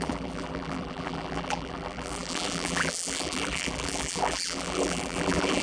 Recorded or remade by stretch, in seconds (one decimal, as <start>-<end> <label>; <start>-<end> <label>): 0.0-5.6 remade